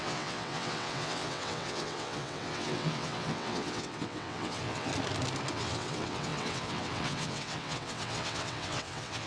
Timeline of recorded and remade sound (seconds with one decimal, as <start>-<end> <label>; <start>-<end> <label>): 0.0-4.9 remade; 4.9-5.5 recorded; 5.5-9.3 remade